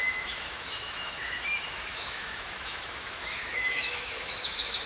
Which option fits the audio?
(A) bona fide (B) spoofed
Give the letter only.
B